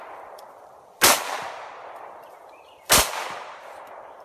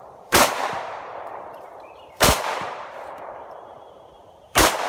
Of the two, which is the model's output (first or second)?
second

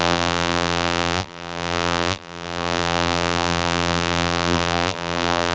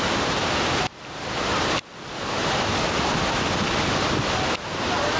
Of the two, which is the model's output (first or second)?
first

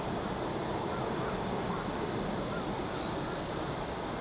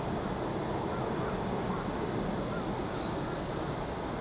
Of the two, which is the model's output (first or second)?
first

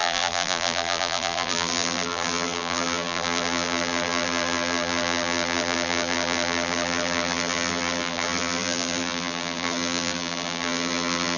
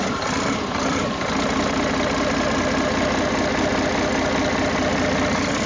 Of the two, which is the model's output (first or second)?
first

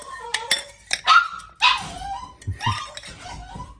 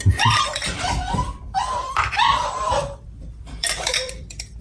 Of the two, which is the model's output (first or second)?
second